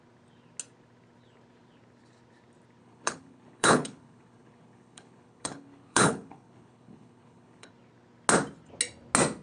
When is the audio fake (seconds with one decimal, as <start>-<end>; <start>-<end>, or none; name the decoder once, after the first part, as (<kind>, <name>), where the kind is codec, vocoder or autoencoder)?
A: 2.8-7.7 (codec, HILCodec)